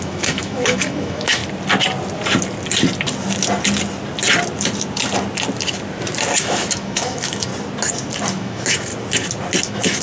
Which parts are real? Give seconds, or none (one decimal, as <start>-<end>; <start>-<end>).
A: 1.4-6.4; 7.5-8.3; 8.9-9.6